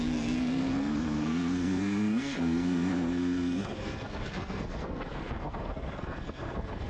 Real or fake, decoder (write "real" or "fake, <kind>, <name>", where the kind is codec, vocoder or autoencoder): fake, codec, SNAC